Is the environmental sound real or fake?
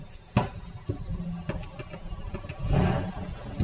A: real